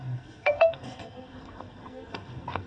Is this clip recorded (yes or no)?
no